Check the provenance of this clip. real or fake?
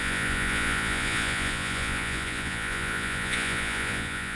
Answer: fake